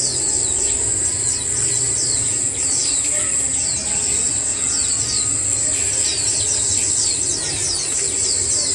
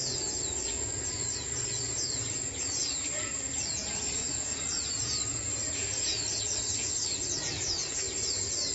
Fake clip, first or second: second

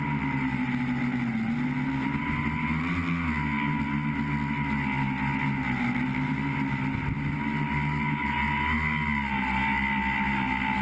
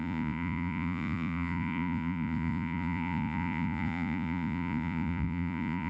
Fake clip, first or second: second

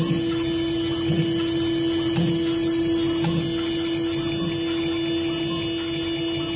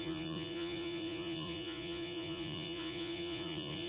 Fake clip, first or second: second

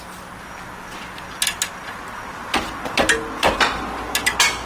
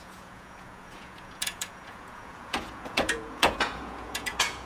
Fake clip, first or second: second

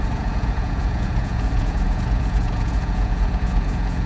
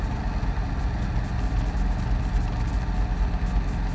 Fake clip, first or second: first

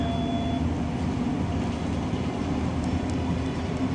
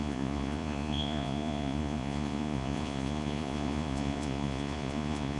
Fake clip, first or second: second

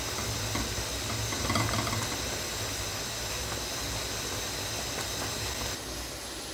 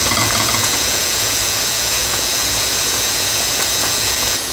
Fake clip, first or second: second